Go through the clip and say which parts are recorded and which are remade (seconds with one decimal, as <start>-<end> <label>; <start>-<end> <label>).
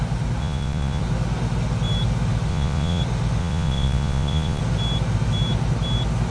0.0-0.4 recorded; 0.4-1.0 remade; 1.0-2.5 recorded; 2.5-3.0 remade; 3.0-3.4 recorded; 3.4-4.6 remade; 4.6-6.3 recorded